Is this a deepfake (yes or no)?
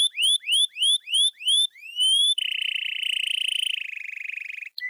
yes